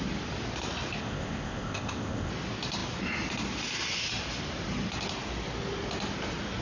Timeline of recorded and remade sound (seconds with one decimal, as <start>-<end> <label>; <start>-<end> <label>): 0.0-1.0 recorded; 1.0-2.3 remade; 2.3-6.6 recorded

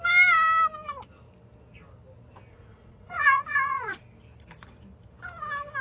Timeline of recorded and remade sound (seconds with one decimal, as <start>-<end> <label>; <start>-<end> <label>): 0.0-2.5 recorded; 2.5-4.0 remade; 4.0-5.8 recorded